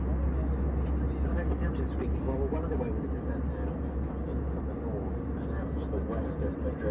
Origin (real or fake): real